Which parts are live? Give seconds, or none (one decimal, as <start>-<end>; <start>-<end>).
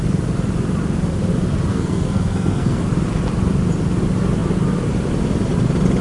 0.0-1.7; 2.8-6.0